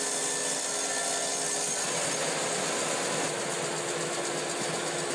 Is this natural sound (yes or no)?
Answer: yes